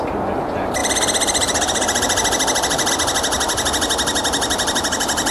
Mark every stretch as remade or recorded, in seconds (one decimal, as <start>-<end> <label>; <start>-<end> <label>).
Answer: 0.0-0.8 recorded; 0.8-2.9 remade; 2.9-4.2 recorded; 4.2-5.3 remade